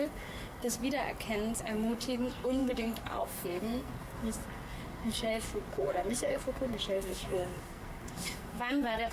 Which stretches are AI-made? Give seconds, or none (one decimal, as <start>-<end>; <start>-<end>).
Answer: 0.0-0.8; 1.6-9.1